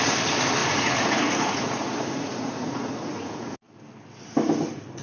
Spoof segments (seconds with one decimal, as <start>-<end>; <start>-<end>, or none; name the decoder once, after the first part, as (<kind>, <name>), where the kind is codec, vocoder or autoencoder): 0.6-3.6 (vocoder, Vocos)